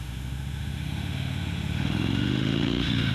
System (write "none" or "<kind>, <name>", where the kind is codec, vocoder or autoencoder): autoencoder, DAC-VAE